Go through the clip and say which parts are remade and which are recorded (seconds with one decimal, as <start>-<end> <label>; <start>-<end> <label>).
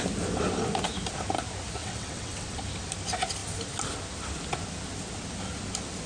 0.0-1.8 recorded; 1.8-2.6 remade; 2.6-6.1 recorded